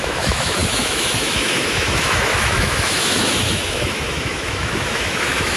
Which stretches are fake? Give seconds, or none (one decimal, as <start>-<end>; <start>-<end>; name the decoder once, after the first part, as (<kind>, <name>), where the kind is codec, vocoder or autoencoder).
0.0-5.6 (autoencoder, DAC-VAE)